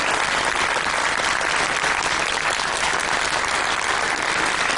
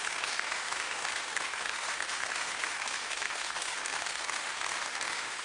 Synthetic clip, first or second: second